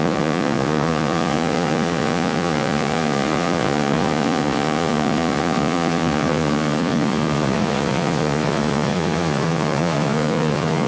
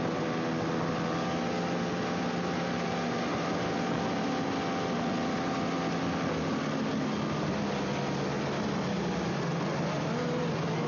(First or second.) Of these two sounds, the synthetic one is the first